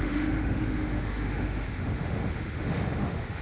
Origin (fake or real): fake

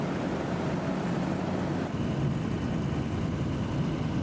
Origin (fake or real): fake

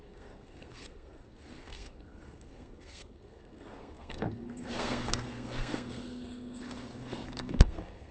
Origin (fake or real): fake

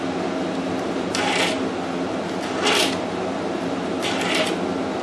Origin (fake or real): real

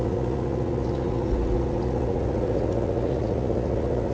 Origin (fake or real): fake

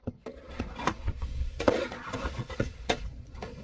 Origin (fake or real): fake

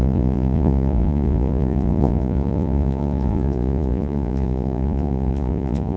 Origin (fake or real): fake